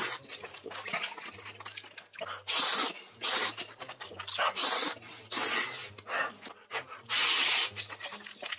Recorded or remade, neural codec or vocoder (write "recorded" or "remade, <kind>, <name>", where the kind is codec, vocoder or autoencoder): recorded